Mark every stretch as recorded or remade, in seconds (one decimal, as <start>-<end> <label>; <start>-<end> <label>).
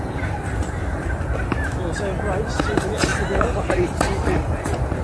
0.0-0.8 remade; 0.8-2.5 recorded; 2.5-3.1 remade; 3.1-3.7 recorded; 3.7-5.0 remade